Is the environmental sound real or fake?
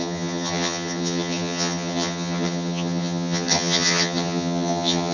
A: fake